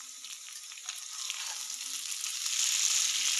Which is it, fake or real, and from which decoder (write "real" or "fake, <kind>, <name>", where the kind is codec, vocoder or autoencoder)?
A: real